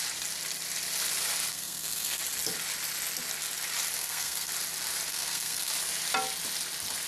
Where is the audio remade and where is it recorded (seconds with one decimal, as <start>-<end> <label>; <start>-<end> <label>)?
0.0-1.5 recorded; 1.5-2.2 remade; 2.2-4.0 recorded; 4.0-4.5 remade; 4.5-5.1 recorded; 5.1-5.7 remade; 5.7-7.1 recorded